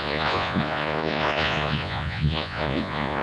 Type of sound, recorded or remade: remade